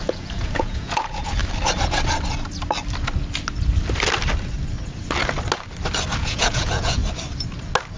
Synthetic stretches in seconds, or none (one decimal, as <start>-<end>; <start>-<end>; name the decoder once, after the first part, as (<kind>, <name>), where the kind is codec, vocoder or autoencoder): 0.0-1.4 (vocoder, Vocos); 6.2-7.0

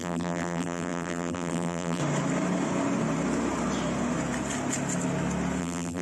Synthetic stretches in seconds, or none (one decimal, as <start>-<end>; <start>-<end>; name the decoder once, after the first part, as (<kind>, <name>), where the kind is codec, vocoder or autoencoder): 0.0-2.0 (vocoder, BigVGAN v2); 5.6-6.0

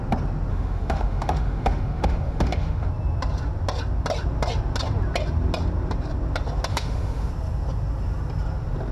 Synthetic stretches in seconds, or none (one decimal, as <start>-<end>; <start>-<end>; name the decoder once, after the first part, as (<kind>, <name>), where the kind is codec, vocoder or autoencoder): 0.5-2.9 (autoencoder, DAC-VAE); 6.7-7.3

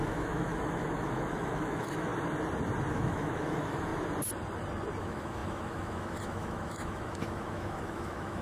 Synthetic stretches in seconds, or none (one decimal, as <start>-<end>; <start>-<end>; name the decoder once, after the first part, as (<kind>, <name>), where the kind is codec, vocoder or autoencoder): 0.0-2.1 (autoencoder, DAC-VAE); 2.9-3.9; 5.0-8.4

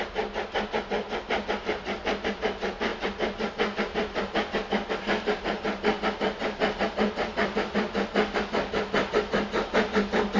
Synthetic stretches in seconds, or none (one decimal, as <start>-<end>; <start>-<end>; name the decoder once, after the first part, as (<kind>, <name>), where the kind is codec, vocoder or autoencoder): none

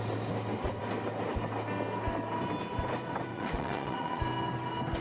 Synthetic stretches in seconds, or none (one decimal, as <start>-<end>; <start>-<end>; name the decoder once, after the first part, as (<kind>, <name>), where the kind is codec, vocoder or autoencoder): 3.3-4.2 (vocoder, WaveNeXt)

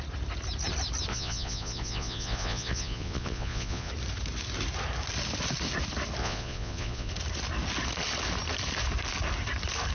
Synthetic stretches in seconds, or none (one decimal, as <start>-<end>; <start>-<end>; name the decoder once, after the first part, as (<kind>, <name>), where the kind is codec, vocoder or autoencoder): 1.1-3.9 (vocoder, Vocos); 6.2-7.1